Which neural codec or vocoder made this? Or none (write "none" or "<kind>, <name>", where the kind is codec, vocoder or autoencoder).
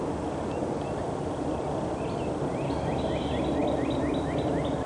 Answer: none